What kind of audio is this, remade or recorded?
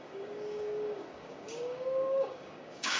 remade